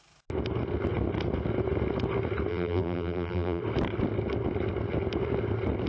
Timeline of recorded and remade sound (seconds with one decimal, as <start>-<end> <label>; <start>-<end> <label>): 0.0-2.5 recorded; 2.5-3.6 remade; 3.6-5.9 recorded